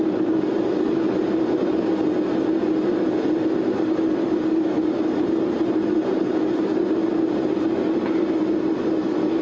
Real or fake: real